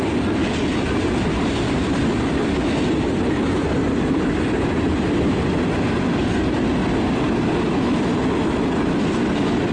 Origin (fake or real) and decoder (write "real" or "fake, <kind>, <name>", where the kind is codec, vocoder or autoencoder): real